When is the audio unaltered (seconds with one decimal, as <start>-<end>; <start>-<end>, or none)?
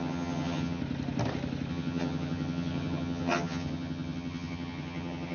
0.8-1.7